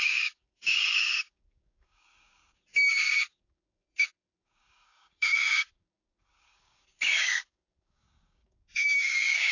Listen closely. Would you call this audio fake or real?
fake